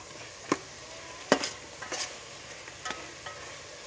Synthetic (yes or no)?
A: no